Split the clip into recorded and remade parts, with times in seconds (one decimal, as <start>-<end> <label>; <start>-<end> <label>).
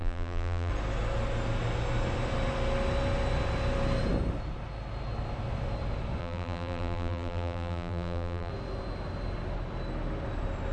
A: 0.0-0.7 remade; 0.7-6.2 recorded; 6.2-8.5 remade; 8.5-10.7 recorded